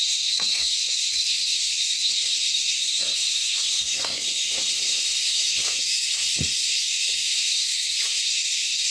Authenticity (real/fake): fake